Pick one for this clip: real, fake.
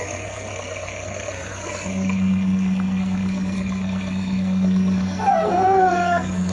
fake